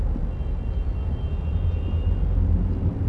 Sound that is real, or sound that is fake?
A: real